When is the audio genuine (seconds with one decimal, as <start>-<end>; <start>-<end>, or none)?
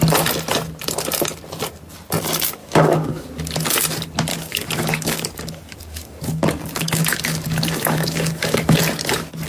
0.0-2.6; 3.3-4.3; 8.8-9.5